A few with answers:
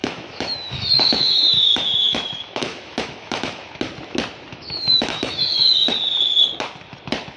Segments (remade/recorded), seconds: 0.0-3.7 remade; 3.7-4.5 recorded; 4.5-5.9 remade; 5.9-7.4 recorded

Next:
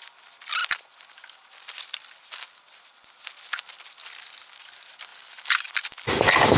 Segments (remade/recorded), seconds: 0.0-0.6 recorded; 0.6-3.2 remade; 3.2-5.1 recorded; 5.1-6.6 remade